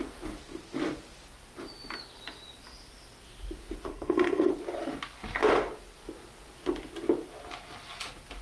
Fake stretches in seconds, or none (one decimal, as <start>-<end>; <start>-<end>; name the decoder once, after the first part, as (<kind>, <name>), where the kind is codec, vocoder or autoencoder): 3.9-4.5 (codec, SNAC)